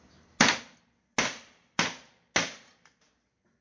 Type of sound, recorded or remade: recorded